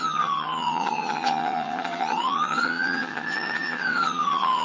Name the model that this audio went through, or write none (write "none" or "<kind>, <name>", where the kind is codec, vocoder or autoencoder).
vocoder, HiFi-GAN